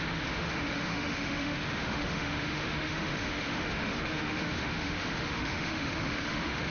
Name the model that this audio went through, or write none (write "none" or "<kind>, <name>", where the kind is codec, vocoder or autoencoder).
autoencoder, DAC-VAE